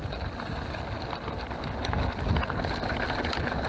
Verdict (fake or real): real